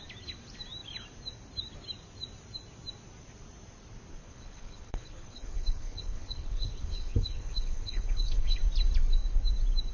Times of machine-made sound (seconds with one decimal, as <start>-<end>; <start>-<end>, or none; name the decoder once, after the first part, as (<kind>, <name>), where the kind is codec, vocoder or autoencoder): 4.2-8.6 (codec, HILCodec)